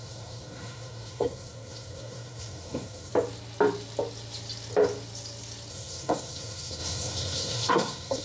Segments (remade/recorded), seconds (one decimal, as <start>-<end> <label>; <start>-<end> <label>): 0.0-3.1 remade; 3.1-5.7 recorded; 5.7-8.2 remade